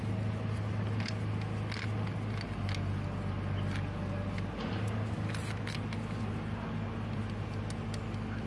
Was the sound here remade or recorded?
recorded